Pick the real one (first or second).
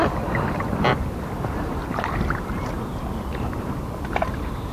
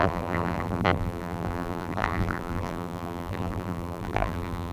first